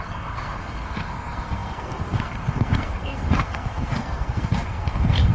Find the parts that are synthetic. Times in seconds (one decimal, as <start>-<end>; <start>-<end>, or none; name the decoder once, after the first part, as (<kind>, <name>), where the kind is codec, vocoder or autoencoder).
0.0-5.3 (codec, SNAC)